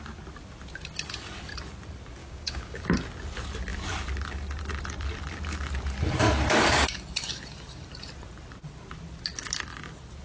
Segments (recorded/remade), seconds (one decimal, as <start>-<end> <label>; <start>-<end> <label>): 0.0-2.2 recorded; 2.2-2.8 remade; 2.8-10.2 recorded